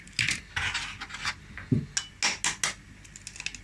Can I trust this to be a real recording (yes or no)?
yes